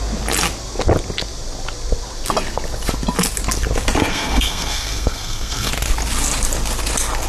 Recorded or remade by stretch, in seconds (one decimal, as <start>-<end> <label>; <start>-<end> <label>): 0.0-4.1 recorded; 4.1-5.7 remade; 5.7-7.3 recorded